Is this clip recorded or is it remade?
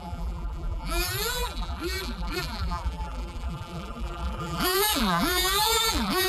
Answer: remade